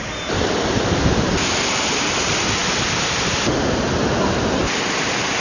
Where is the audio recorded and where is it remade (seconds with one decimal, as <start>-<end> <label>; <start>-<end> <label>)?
0.0-5.4 recorded